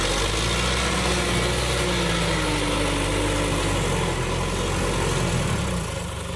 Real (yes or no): yes